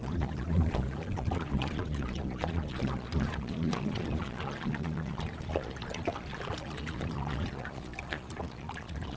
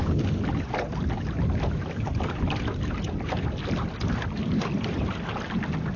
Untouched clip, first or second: second